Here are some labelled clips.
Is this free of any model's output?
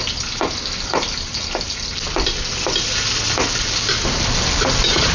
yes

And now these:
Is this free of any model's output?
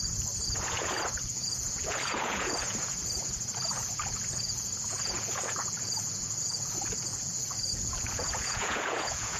no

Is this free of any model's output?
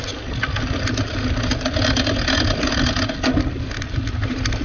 yes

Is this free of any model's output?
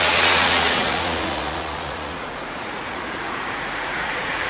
no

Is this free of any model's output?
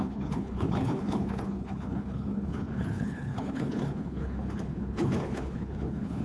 no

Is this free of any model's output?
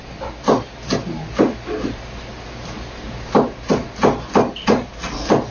yes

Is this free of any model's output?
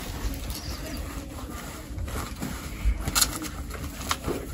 yes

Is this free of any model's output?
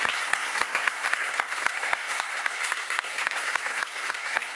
no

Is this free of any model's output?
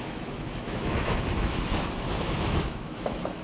no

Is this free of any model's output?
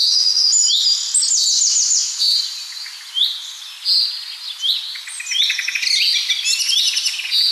yes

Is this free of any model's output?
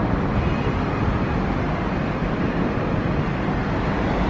yes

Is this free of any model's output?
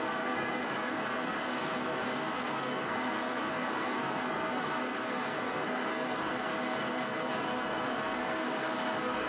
no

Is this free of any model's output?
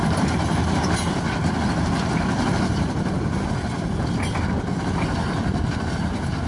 no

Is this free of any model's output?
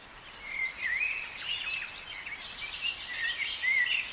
yes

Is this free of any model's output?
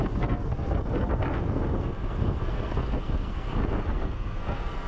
no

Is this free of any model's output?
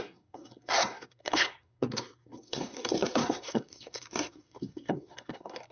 no